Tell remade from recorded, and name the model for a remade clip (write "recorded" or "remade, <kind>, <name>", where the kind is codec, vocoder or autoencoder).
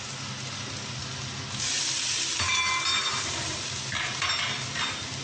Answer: recorded